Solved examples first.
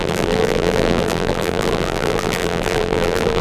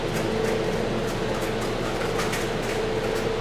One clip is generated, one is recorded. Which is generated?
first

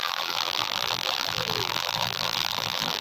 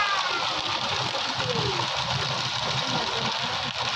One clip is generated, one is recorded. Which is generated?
first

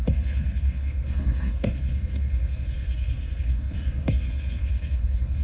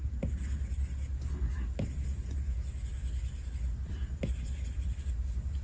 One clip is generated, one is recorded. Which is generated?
first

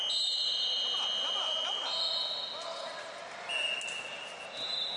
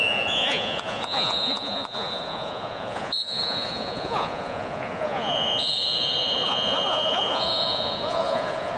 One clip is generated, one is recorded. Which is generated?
second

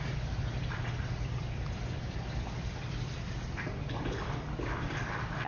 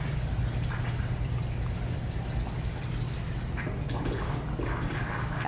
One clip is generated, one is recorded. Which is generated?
first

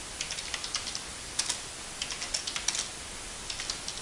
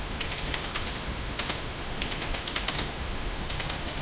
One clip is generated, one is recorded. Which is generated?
second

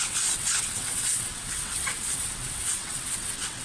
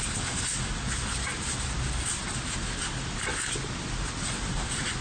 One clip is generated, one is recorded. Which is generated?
first